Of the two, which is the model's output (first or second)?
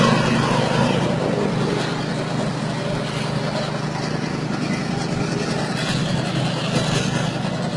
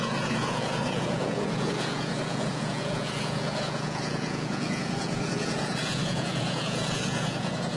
second